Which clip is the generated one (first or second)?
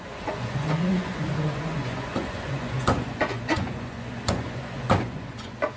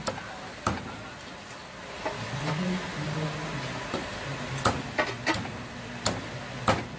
first